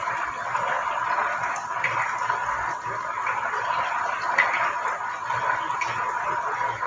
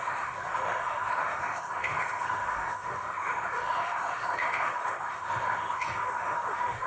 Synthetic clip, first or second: second